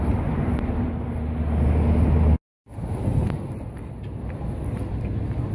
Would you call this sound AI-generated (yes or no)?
no